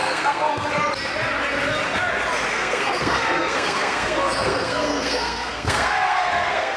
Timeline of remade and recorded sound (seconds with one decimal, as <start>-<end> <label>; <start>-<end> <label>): 0.0-0.7 remade; 0.7-2.5 recorded; 2.5-6.8 remade